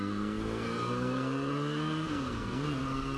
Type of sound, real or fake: fake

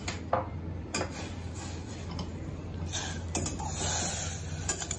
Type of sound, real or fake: real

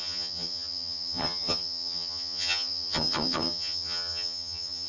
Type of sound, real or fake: fake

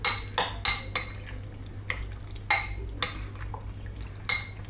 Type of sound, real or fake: real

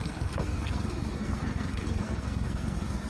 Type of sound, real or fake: fake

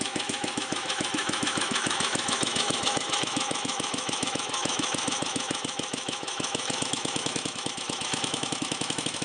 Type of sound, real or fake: fake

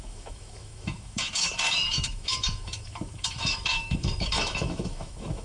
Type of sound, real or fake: fake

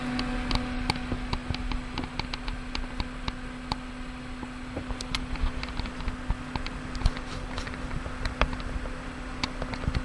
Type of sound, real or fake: real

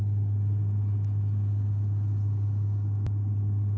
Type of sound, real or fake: real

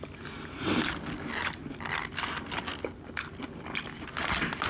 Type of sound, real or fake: real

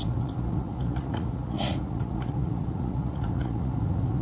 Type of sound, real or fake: fake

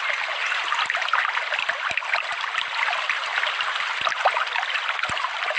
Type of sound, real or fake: real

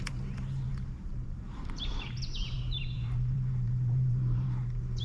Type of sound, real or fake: fake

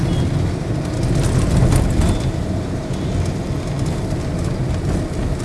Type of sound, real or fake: real